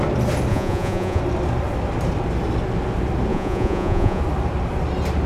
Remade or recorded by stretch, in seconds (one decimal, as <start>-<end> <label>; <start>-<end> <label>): 0.0-0.5 recorded; 0.5-1.2 remade; 1.2-3.3 recorded; 3.3-4.2 remade; 4.2-5.3 recorded